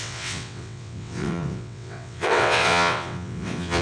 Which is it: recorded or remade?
remade